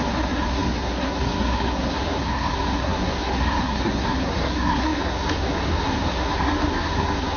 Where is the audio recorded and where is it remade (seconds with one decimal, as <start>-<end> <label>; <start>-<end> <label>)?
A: 0.0-7.4 remade